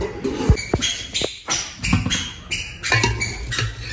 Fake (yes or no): no